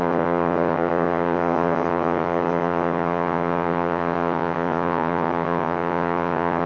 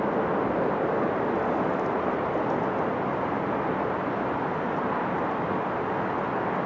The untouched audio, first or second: second